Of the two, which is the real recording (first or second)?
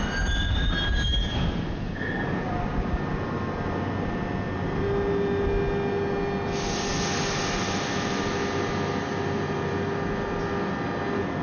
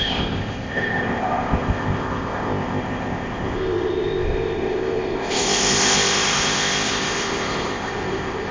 first